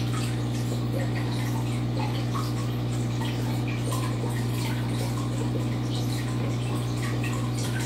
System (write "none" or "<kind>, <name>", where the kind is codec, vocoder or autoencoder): vocoder, BigVGAN v2